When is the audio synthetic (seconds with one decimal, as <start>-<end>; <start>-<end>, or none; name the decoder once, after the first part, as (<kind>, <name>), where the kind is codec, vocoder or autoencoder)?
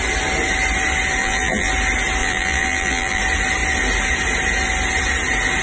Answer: 1.2-1.7 (vocoder, BigVGAN v2); 2.2-3.2